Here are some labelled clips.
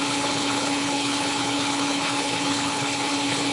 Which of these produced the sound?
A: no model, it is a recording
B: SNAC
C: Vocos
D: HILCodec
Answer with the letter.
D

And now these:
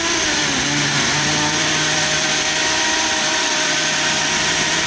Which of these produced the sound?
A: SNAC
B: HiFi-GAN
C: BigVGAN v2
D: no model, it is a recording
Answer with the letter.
C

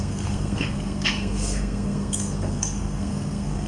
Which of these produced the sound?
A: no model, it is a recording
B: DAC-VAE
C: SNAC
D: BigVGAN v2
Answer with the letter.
C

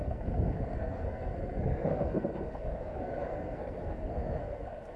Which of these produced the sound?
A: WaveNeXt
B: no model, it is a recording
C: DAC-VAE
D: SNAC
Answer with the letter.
D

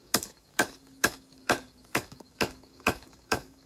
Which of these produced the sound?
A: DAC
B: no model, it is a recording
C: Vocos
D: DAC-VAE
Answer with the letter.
A